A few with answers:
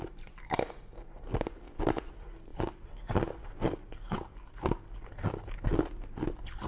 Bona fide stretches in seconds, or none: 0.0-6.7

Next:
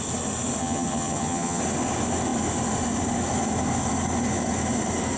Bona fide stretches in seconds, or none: 0.0-0.6; 1.6-5.2

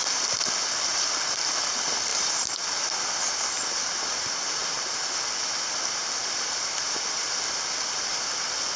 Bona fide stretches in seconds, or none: 0.0-0.9; 1.5-2.1; 3.0-8.8

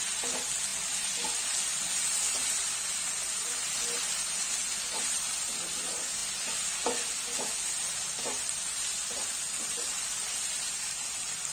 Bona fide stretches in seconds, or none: 0.0-11.5

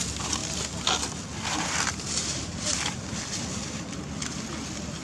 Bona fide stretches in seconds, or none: 0.0-5.0

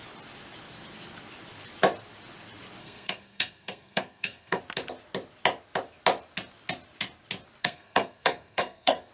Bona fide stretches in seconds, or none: 0.0-2.8; 4.6-7.6

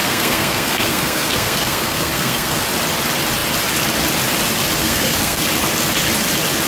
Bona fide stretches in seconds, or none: 2.6-4.8; 5.4-6.7